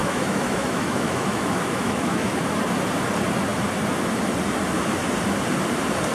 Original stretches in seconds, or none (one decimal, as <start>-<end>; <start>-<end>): 2.4-6.1

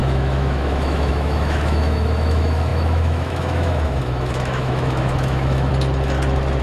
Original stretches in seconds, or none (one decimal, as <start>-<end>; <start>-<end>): 5.7-6.6

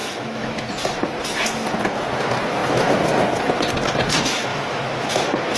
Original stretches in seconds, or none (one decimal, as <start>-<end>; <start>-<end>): 0.7-4.5; 5.1-5.6

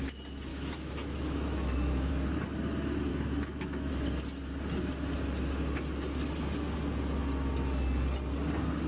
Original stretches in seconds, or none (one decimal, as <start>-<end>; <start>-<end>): 0.0-0.5; 2.1-3.1; 3.9-8.9

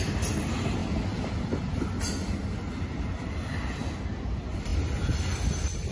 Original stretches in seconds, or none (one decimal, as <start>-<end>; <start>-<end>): 0.0-5.9

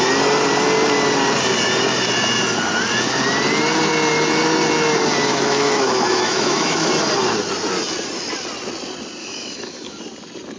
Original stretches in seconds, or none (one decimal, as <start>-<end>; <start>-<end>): 0.0-5.3; 6.9-9.2; 10.0-10.6

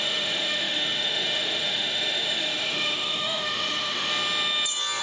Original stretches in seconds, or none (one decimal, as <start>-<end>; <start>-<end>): 4.1-5.0

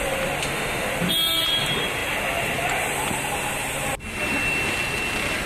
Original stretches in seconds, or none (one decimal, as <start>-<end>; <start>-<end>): 0.0-0.4; 0.9-5.5